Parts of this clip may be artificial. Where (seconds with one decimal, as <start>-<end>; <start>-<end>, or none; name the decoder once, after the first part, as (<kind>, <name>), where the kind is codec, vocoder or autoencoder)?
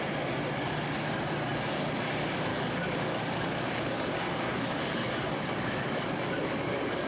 2.5-7.1 (codec, DAC)